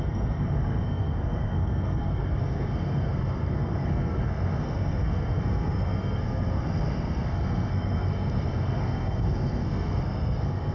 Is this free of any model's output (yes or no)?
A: no